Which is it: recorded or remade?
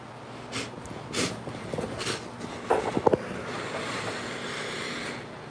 recorded